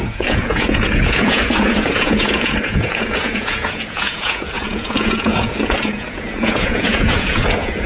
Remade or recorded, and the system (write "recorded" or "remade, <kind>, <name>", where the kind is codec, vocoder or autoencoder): remade, vocoder, Vocos